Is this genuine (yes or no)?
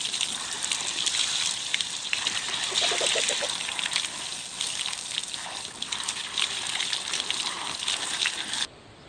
yes